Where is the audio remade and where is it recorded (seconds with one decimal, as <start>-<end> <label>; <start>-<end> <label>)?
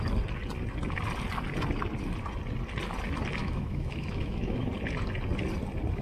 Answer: 0.0-3.4 recorded; 3.4-4.7 remade; 4.7-6.0 recorded